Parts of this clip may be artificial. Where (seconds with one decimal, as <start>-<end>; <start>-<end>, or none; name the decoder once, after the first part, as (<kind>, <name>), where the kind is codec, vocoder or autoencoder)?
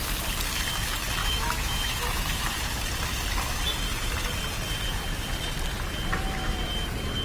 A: 1.2-2.6 (autoencoder, DAC-VAE)